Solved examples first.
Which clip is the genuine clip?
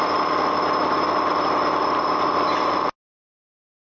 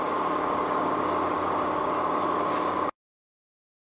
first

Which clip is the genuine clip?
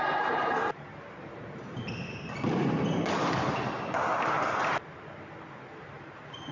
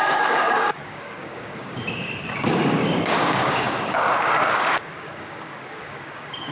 first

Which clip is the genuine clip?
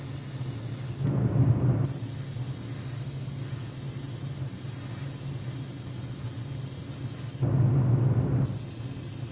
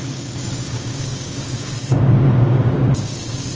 first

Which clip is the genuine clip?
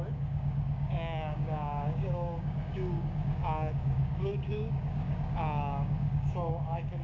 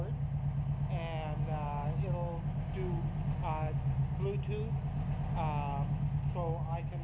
second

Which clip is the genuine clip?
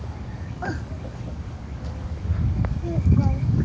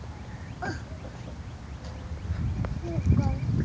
second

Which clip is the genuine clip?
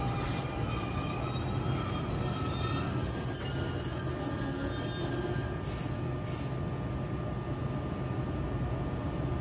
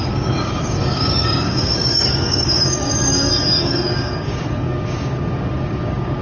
first